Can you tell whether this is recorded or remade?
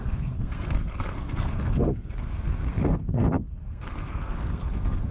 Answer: remade